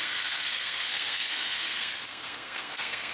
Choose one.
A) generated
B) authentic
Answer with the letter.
A